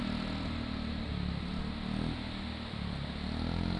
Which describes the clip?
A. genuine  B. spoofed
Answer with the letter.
A